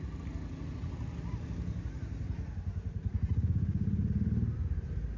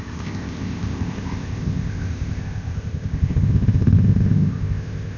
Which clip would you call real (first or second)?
first